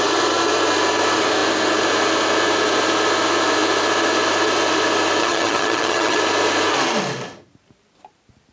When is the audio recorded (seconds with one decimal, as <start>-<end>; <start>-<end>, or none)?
0.0-5.2; 6.2-8.5

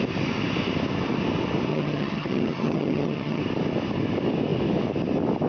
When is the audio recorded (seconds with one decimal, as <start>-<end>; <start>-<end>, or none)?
0.0-1.7; 3.4-5.5

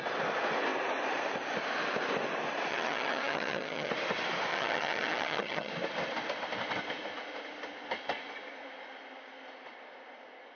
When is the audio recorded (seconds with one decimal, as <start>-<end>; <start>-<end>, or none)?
0.0-2.7; 3.9-4.5; 5.7-10.6

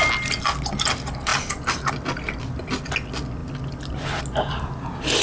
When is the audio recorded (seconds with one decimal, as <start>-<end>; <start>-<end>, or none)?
0.0-5.2

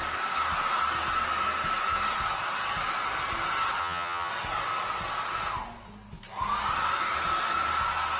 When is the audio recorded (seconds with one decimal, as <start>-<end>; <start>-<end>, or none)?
0.0-3.8; 4.3-8.2

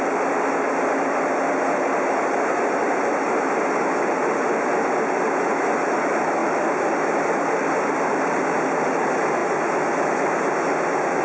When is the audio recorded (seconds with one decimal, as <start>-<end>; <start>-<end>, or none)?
0.0-11.2

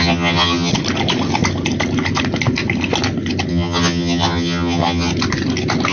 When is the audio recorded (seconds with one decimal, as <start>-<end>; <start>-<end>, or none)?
0.7-3.5; 5.1-5.9

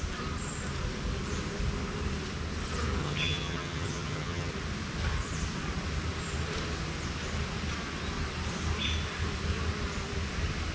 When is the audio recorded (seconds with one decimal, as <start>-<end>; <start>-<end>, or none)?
0.0-3.0; 4.5-10.7